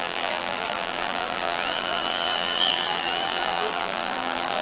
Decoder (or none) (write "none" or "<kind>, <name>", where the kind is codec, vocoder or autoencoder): vocoder, BigVGAN v2